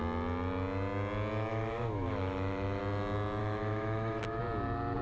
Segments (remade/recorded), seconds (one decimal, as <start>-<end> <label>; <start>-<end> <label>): 0.0-1.5 recorded; 1.5-2.8 remade; 2.8-3.4 recorded; 3.4-4.4 remade; 4.4-5.0 recorded

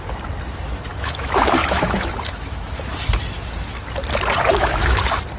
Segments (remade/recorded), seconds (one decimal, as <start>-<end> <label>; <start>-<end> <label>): 0.0-0.9 recorded; 0.9-2.9 remade; 2.9-4.5 recorded; 4.5-5.0 remade; 5.0-5.4 recorded

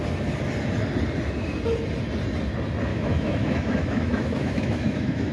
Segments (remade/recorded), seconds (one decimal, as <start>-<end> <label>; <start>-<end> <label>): 0.0-2.9 recorded; 2.9-5.3 remade

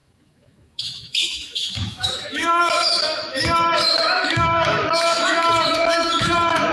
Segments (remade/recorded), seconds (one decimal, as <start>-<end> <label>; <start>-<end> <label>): 0.0-6.7 remade

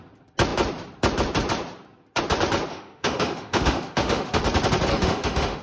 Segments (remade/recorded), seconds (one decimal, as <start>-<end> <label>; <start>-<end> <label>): 0.0-2.7 recorded; 2.7-4.4 remade; 4.4-4.9 recorded; 4.9-5.6 remade

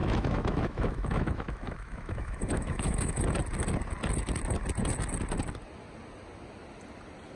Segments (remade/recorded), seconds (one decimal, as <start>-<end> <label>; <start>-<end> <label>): 0.0-3.2 remade; 3.2-7.4 recorded

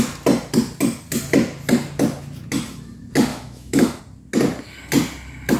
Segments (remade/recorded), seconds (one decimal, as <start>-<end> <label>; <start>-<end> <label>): 0.0-3.3 recorded; 3.3-4.0 remade; 4.0-5.6 recorded